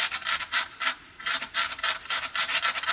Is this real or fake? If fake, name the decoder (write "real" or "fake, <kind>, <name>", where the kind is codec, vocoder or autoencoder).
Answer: real